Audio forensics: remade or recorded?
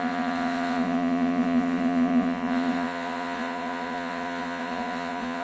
remade